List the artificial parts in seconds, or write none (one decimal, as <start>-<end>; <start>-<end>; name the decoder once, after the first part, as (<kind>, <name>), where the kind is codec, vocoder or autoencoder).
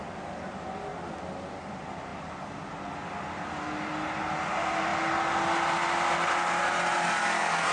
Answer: none